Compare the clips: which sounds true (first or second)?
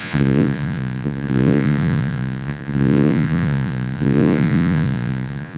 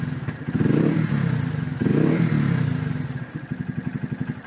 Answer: second